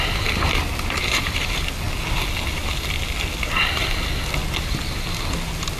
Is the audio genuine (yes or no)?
yes